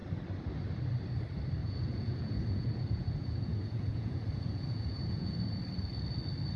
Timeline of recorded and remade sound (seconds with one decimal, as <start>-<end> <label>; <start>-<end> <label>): 0.0-1.6 recorded; 1.6-5.6 remade; 5.6-6.6 recorded